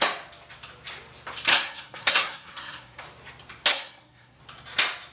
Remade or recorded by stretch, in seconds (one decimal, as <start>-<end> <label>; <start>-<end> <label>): 0.0-1.5 recorded; 1.5-3.0 remade; 3.0-3.7 recorded; 3.7-4.4 remade; 4.4-5.1 recorded